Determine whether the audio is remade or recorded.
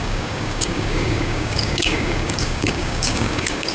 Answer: remade